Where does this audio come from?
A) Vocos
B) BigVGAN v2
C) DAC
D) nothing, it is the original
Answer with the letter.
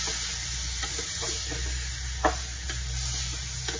D